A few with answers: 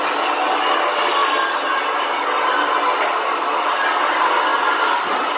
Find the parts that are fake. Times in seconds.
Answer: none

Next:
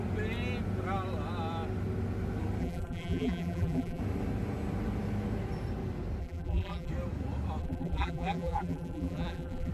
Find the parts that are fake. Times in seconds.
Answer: 2.6-4.0; 6.2-6.9; 7.6-9.7

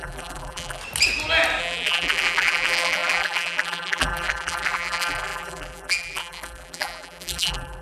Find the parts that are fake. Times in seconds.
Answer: 0.0-0.8; 1.6-7.8

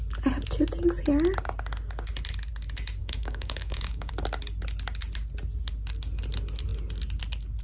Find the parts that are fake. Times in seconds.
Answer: 3.0-4.1

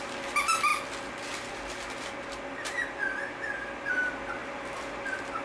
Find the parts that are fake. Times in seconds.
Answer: none

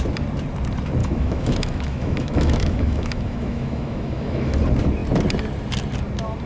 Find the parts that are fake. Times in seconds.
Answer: 1.0-4.6